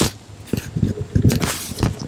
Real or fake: real